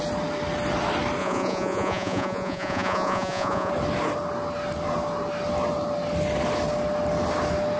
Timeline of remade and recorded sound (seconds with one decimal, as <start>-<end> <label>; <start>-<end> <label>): 0.0-1.2 recorded; 1.2-3.7 remade; 3.7-7.8 recorded